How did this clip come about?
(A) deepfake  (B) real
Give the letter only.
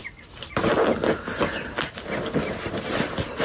B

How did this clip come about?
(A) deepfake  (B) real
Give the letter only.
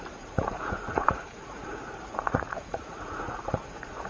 A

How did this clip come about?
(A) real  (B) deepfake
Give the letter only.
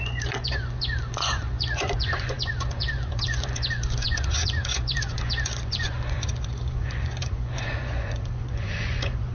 B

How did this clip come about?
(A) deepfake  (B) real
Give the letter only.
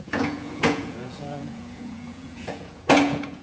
A